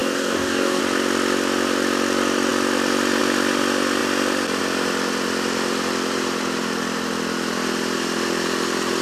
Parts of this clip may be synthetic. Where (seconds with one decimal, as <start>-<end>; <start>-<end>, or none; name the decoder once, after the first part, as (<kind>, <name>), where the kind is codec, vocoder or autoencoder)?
0.0-0.8 (codec, DAC)